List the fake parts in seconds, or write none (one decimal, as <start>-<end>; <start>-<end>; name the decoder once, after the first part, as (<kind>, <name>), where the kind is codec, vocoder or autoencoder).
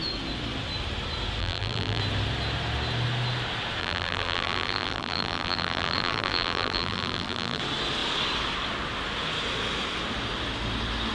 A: 1.4-2.0 (vocoder, BigVGAN v2); 3.8-7.6